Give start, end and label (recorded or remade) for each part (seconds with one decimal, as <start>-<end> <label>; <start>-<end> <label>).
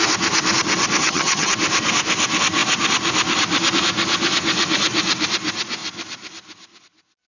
0.0-1.0 recorded; 1.0-1.5 remade; 1.5-7.3 recorded